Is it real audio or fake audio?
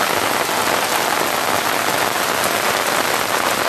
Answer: real